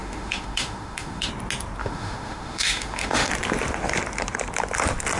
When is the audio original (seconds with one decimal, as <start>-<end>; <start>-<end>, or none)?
1.3-1.8; 3.3-5.2